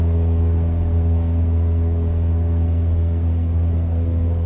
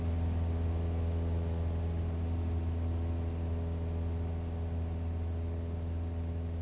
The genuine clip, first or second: second